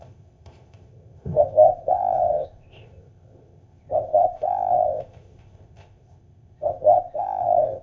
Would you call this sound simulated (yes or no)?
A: yes